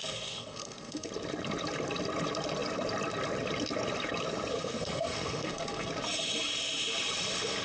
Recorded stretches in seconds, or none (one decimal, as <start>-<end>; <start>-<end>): 1.1-4.5; 5.9-7.6